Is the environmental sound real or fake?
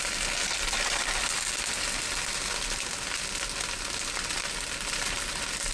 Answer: real